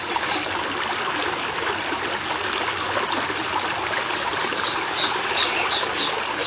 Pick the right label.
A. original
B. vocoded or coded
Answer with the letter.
A